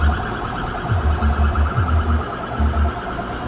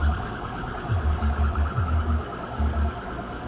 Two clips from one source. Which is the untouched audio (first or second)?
first